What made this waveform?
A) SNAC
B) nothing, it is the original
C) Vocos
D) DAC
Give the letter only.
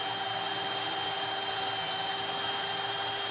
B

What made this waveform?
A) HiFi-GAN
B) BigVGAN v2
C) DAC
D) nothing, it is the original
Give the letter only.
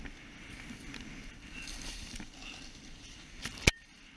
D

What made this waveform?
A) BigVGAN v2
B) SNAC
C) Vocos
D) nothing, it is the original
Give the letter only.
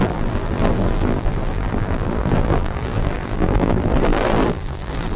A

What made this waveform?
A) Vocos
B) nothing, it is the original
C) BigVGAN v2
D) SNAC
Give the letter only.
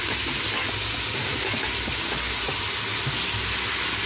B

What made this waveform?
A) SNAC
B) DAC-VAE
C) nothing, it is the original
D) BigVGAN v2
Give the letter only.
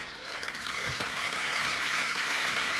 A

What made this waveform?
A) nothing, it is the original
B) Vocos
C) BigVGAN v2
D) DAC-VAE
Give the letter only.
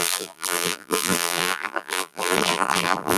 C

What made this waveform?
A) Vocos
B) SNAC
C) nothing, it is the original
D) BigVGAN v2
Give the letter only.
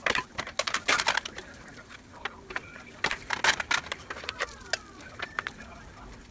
C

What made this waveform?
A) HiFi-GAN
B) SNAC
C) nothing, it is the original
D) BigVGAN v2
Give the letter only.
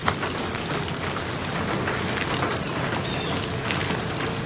C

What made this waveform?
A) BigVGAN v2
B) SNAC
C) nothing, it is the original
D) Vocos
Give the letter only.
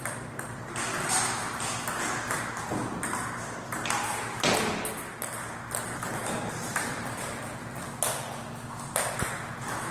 C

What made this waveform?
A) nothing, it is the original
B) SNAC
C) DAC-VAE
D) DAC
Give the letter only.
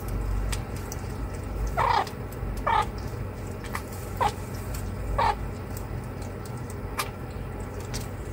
A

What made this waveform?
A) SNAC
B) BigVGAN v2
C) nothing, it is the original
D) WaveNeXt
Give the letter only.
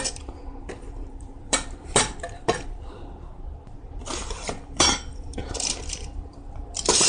B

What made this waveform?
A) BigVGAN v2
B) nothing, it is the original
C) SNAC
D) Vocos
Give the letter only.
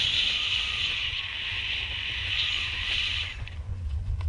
D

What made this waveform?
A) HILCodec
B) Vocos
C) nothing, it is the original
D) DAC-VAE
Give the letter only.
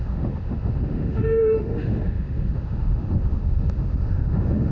D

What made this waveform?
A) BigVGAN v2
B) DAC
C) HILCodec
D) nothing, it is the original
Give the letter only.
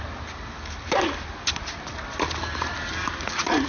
D